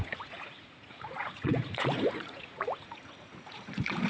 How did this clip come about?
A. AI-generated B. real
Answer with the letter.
A